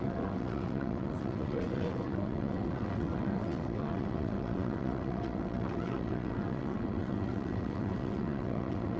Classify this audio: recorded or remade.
remade